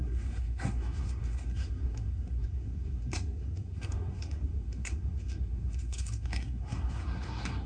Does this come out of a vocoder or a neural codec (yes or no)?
yes